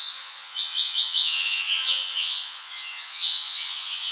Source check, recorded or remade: remade